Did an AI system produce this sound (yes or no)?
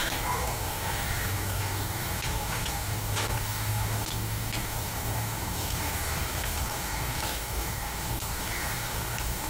yes